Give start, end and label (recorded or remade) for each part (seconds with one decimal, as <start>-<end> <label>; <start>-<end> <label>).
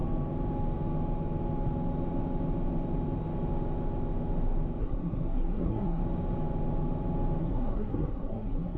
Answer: 0.0-4.8 recorded; 4.8-6.0 remade; 6.0-7.4 recorded; 7.4-8.8 remade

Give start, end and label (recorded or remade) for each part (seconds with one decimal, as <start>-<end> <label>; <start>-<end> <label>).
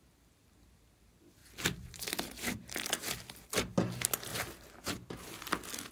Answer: 0.0-1.4 recorded; 1.4-2.5 remade; 2.5-4.3 recorded; 4.3-5.4 remade; 5.4-5.9 recorded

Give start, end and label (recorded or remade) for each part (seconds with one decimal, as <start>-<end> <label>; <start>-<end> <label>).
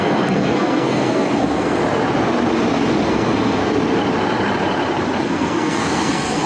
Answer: 0.0-1.8 remade; 1.8-3.1 recorded; 3.1-3.6 remade; 3.6-5.2 recorded; 5.2-6.5 remade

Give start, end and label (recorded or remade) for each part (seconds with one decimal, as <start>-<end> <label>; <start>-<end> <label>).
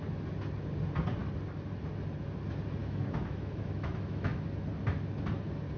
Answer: 0.0-2.8 recorded; 2.8-4.4 remade; 4.4-5.8 recorded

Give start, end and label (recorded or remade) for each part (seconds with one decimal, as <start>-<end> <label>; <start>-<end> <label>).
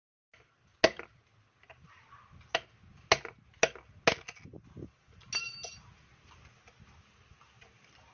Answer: 0.0-8.1 recorded